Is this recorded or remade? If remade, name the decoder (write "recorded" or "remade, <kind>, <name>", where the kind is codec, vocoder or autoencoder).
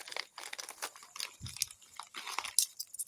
recorded